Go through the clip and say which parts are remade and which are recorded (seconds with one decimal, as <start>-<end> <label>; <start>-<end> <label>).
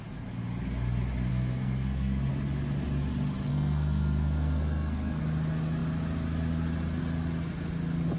0.0-1.3 recorded; 1.3-2.3 remade; 2.3-3.5 recorded; 3.5-5.2 remade; 5.2-8.2 recorded